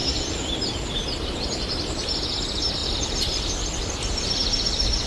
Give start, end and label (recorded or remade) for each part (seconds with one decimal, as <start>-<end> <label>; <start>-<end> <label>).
0.0-2.1 remade; 2.1-2.8 recorded; 2.8-4.4 remade; 4.4-5.1 recorded